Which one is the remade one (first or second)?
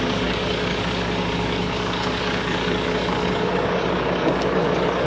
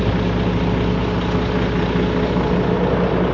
first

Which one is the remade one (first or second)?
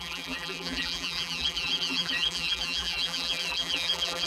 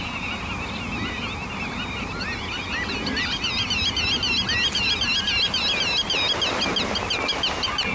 first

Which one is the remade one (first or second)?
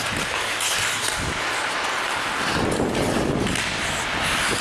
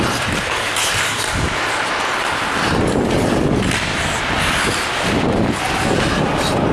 second